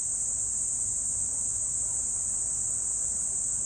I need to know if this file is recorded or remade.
recorded